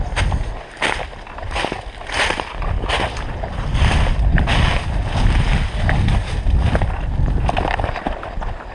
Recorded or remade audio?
recorded